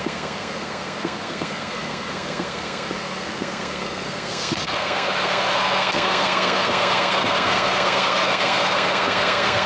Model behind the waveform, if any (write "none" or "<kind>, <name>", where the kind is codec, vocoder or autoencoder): codec, SNAC